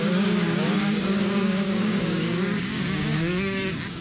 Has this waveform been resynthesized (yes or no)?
yes